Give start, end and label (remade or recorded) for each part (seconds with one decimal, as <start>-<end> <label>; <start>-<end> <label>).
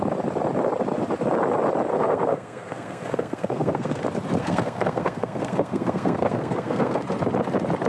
0.0-1.9 recorded; 1.9-4.0 remade; 4.0-4.4 recorded; 4.4-7.0 remade; 7.0-7.9 recorded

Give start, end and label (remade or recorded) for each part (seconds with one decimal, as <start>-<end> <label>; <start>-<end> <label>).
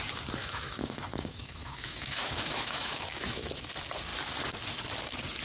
0.0-0.4 recorded; 0.4-3.6 remade; 3.6-5.4 recorded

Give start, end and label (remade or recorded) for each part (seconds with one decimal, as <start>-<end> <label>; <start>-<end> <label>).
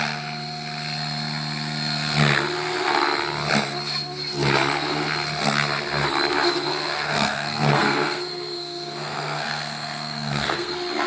0.0-6.7 recorded; 6.7-10.7 remade; 10.7-11.1 recorded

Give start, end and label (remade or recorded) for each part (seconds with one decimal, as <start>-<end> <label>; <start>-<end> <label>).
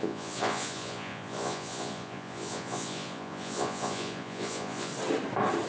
0.0-4.9 remade; 4.9-5.7 recorded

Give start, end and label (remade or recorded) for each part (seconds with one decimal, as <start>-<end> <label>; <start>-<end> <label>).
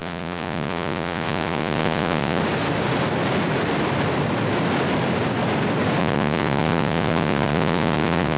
0.0-2.4 remade; 2.4-6.0 recorded; 6.0-8.4 remade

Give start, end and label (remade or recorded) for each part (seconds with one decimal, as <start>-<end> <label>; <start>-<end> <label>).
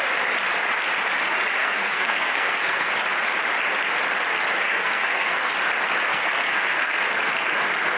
0.0-1.6 recorded; 1.6-2.9 remade; 2.9-4.6 recorded; 4.6-5.5 remade; 5.5-6.1 recorded; 6.1-7.0 remade; 7.0-8.0 recorded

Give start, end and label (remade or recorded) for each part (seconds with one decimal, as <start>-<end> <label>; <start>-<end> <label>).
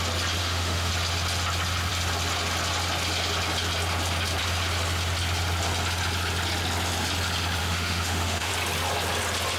0.0-0.4 recorded; 0.4-0.9 remade; 0.9-7.6 recorded; 7.6-8.5 remade; 8.5-9.6 recorded